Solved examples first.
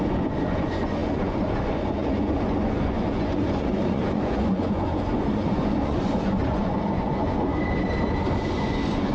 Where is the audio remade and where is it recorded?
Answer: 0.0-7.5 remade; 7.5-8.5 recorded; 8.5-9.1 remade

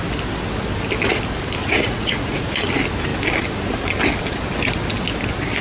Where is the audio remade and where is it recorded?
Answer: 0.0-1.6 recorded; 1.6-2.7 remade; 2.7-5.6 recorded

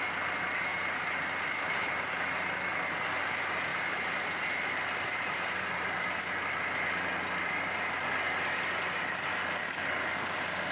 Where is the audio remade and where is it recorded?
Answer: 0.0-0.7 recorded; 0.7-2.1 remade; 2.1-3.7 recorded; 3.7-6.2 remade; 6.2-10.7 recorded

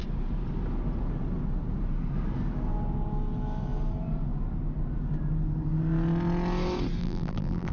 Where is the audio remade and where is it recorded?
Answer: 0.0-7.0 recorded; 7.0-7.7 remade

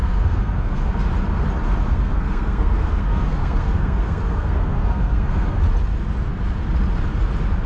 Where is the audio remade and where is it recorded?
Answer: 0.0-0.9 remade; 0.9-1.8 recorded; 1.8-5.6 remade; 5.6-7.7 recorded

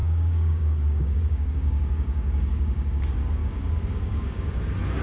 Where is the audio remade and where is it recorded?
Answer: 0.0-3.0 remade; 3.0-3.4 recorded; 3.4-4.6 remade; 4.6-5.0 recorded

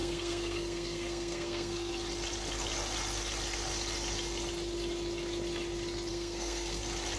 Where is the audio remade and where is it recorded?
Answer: 0.0-1.9 remade; 1.9-6.1 recorded; 6.1-6.8 remade; 6.8-7.2 recorded

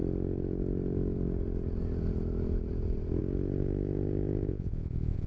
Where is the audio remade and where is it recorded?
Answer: 0.0-4.5 recorded; 4.5-5.3 remade